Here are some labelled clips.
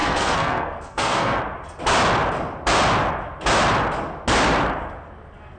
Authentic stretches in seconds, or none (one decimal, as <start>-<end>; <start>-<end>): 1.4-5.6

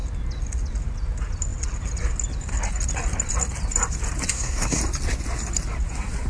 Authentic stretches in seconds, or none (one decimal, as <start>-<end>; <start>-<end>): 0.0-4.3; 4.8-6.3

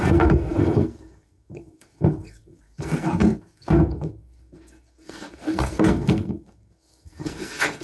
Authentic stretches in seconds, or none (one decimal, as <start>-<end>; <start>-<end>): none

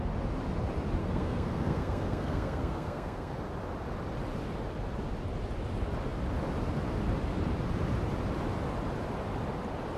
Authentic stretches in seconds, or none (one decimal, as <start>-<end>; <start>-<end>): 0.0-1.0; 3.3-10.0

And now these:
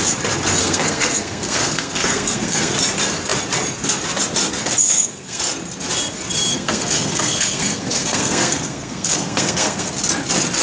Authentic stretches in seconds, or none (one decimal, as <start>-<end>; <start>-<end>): 0.0-0.6; 2.7-4.8; 5.4-6.5; 9.9-10.6

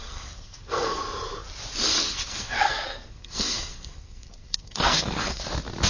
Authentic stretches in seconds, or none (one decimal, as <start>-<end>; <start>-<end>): 1.0-1.9; 5.4-5.9